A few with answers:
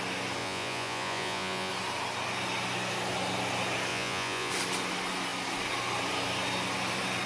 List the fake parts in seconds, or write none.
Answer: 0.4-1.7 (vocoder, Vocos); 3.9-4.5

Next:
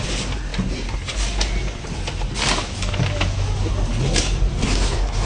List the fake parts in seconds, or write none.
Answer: 4.5-5.3 (codec, SNAC)